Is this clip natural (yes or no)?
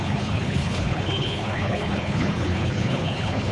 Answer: no